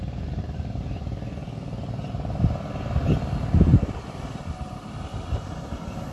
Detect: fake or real real